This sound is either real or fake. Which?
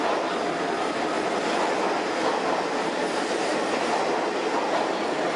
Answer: real